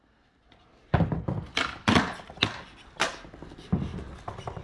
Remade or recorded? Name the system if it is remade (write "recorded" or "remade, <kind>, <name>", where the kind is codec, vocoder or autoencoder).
recorded